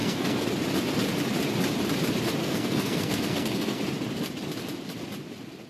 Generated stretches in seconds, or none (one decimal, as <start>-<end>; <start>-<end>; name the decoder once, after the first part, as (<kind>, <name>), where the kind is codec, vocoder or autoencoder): 0.0-0.5 (codec, SNAC); 2.4-3.8